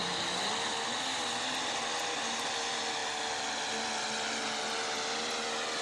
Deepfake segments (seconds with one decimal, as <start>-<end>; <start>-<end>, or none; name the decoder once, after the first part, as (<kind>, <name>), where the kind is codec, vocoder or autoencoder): none